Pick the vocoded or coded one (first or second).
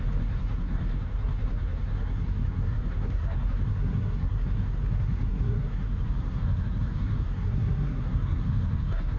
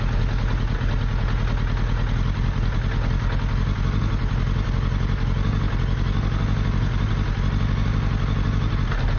first